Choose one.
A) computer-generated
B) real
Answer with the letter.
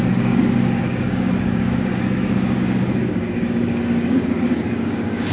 A